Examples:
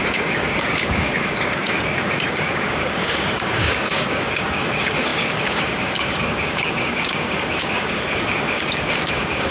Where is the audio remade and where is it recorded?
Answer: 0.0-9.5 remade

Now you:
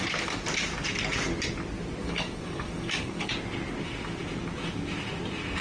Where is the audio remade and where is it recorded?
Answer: 0.0-2.0 recorded; 2.0-3.3 remade; 3.3-5.6 recorded

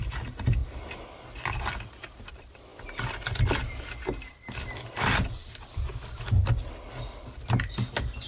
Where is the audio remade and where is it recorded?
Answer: 0.0-8.3 recorded

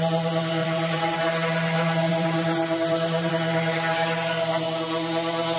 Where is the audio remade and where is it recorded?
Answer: 0.0-0.6 recorded; 0.6-1.2 remade; 1.2-2.1 recorded; 2.1-3.3 remade; 3.3-5.6 recorded

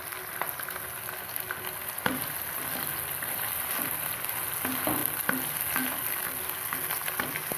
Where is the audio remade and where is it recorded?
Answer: 0.0-7.6 recorded

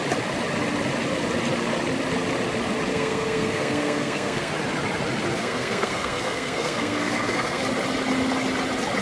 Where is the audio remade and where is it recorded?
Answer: 0.0-2.9 recorded; 2.9-4.5 remade; 4.5-5.3 recorded; 5.3-7.6 remade; 7.6-9.0 recorded